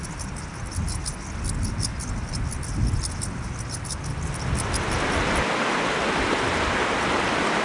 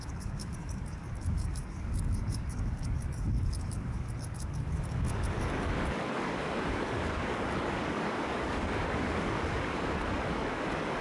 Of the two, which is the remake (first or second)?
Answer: second